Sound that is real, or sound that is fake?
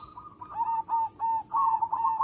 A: real